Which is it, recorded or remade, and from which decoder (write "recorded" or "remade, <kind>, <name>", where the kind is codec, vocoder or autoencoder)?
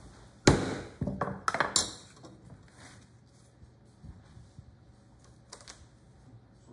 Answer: recorded